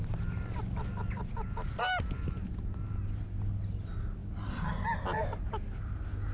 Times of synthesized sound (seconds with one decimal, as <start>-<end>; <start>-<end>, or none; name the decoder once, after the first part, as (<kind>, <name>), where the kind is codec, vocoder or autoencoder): none